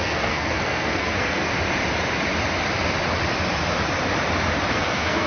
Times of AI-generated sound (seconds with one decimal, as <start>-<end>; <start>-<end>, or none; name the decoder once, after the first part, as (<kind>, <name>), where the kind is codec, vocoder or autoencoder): 0.0-1.5 (codec, SNAC); 4.7-5.3